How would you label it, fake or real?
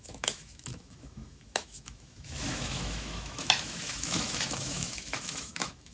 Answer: fake